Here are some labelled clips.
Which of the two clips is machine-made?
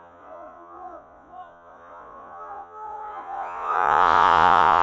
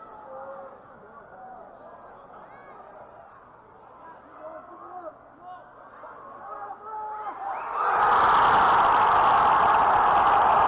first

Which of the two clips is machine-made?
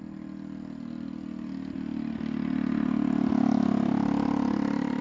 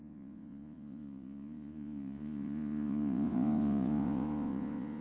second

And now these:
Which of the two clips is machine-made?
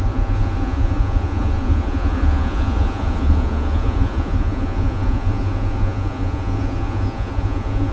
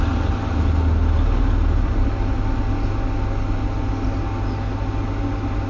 first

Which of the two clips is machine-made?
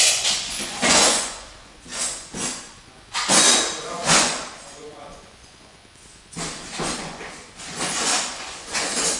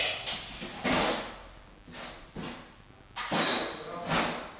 first